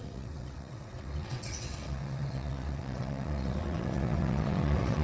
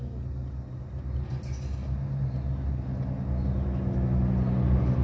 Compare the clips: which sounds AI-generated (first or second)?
first